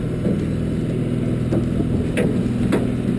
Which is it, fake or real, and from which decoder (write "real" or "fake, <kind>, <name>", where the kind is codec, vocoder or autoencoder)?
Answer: real